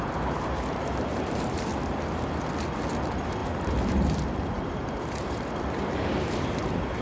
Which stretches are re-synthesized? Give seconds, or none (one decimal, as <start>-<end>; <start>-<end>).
0.0-1.7; 3.0-7.0